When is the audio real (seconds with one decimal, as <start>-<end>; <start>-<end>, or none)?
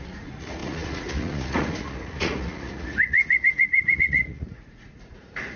none